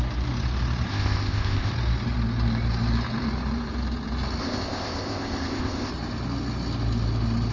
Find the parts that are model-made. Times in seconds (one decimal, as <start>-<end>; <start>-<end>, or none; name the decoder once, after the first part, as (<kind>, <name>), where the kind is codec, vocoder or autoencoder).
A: 0.9-1.7 (codec, ZipCodec); 4.4-5.9